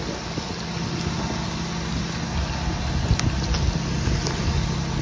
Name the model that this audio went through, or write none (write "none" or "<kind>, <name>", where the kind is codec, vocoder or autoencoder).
none